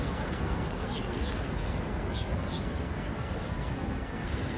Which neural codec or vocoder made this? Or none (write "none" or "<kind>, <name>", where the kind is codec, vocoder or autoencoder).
codec, SNAC